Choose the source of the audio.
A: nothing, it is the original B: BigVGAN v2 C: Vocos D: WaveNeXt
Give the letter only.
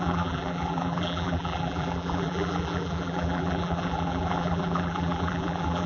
B